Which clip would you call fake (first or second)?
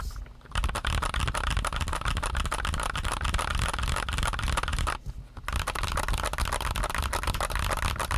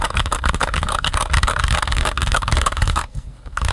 second